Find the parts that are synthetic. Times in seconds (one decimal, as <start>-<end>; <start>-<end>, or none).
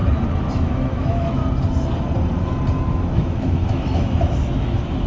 0.5-1.4; 2.8-5.1